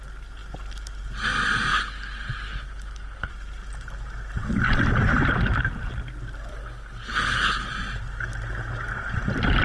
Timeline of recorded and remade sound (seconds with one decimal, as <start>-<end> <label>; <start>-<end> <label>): 0.0-1.7 recorded; 1.7-3.3 remade; 3.3-6.5 recorded; 6.5-7.7 remade; 7.7-9.6 recorded

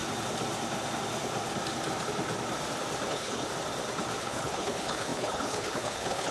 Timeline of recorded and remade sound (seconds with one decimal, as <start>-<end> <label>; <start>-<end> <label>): 0.0-3.1 recorded; 3.1-3.5 remade; 3.5-4.2 recorded; 4.2-6.3 remade

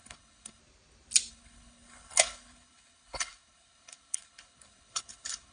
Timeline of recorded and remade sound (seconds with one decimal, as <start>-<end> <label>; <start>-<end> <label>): 0.0-0.6 remade; 0.6-1.3 recorded; 1.3-5.5 remade